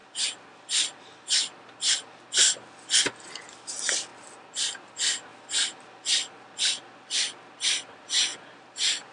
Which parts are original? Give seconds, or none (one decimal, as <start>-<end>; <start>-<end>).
1.0-9.1